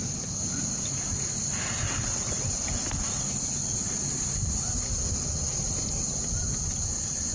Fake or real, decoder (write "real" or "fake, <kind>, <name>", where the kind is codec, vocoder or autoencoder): real